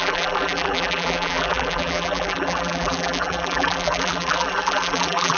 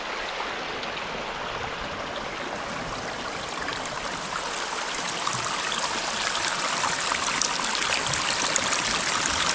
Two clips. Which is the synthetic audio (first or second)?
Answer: first